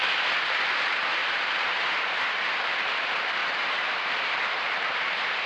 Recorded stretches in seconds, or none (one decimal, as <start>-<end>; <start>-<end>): 0.0-1.2; 2.5-3.4